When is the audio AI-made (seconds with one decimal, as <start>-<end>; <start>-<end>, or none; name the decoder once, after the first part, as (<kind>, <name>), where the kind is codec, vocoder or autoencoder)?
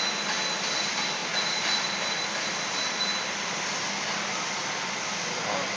none